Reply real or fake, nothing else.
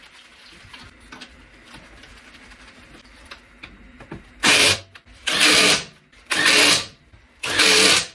fake